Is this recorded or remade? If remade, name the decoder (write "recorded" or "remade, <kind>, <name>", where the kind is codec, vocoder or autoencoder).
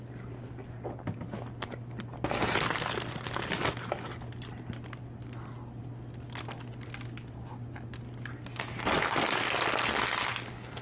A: recorded